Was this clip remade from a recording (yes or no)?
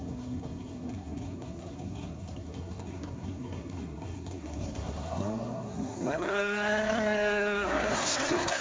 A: yes